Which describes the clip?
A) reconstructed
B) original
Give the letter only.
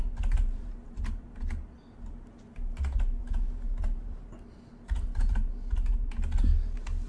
B